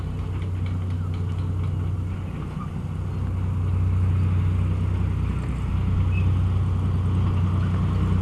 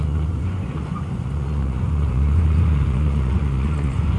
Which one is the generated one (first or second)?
second